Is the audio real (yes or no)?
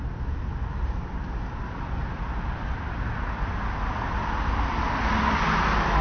yes